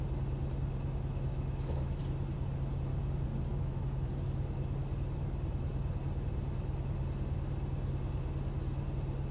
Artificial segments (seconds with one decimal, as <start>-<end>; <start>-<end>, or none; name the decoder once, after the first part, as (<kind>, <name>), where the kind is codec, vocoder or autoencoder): 1.3-2.0 (autoencoder, DAC-VAE); 3.5-4.1